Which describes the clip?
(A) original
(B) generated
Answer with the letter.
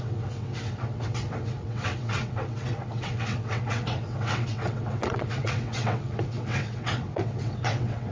B